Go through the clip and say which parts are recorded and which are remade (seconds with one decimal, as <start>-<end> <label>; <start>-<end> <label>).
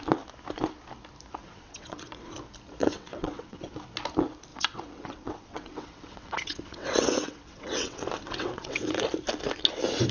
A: 0.0-1.4 recorded; 1.4-2.3 remade; 2.3-2.8 recorded; 2.8-3.7 remade; 3.7-4.5 recorded; 4.5-9.0 remade; 9.0-10.1 recorded